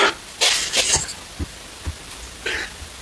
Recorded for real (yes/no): no